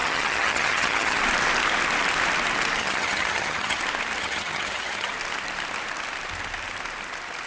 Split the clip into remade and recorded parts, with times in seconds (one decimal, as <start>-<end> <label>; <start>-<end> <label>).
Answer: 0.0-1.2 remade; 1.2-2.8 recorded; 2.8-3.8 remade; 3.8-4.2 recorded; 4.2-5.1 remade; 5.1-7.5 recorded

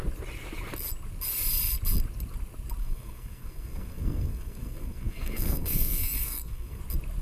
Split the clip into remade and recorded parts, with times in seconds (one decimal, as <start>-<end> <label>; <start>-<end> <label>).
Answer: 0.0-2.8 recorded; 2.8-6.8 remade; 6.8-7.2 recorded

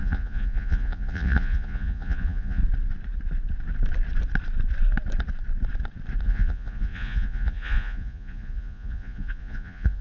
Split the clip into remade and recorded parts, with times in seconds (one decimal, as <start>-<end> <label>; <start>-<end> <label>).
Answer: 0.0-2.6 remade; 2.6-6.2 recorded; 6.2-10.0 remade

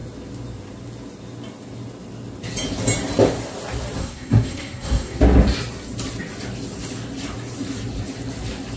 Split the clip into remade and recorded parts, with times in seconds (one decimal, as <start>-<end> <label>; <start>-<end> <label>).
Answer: 0.0-4.0 recorded; 4.0-5.2 remade; 5.2-8.8 recorded